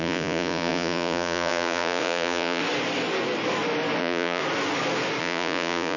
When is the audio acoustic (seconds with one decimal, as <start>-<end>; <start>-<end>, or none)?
2.6-4.0; 4.4-5.2